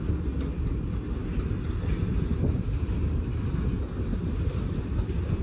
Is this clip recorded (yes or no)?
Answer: yes